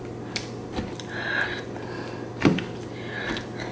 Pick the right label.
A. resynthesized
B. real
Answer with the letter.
B